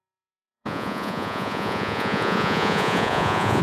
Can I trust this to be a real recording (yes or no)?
no